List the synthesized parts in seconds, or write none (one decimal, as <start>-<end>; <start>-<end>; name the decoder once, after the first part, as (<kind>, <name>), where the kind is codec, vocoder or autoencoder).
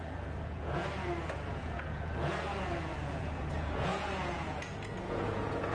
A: 0.0-5.7 (vocoder, Vocos)